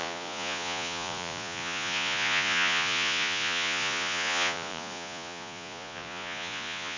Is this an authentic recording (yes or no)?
no